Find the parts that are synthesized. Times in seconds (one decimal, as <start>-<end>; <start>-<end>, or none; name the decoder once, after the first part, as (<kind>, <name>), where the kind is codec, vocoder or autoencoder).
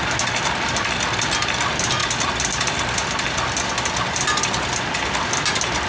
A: none